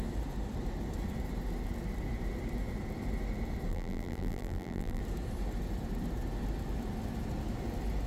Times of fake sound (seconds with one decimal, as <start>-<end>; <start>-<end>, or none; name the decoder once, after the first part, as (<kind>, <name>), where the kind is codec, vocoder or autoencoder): 3.7-5.0 (vocoder, BigVGAN v2)